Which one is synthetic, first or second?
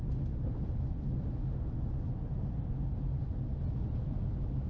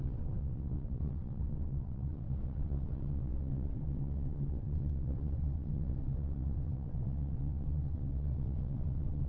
second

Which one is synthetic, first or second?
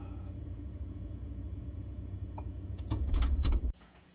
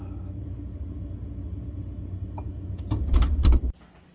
first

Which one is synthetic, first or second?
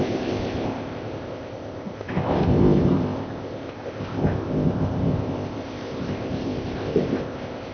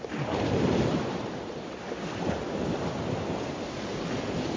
first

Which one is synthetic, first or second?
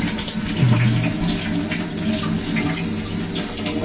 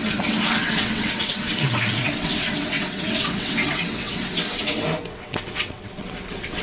second